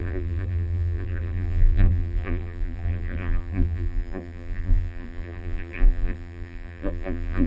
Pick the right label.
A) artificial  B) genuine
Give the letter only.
A